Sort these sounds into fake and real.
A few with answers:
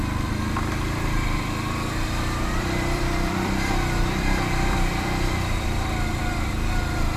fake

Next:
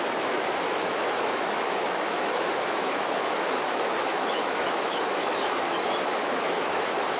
fake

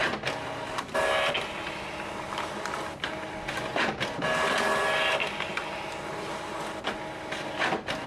real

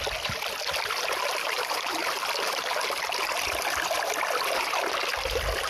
real